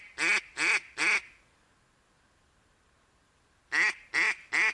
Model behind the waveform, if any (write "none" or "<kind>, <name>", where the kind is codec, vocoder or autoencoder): none